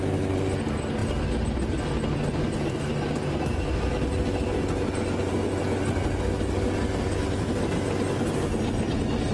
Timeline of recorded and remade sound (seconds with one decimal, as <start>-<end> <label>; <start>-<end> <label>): 0.0-9.3 recorded